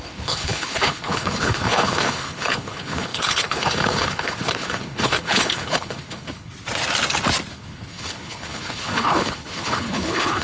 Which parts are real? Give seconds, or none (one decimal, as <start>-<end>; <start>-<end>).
6.5-7.5